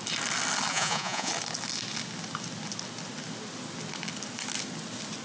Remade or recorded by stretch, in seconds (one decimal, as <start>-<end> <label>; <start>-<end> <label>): 0.0-0.7 recorded; 0.7-1.3 remade; 1.3-5.2 recorded